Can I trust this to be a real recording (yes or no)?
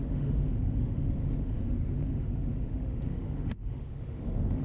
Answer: no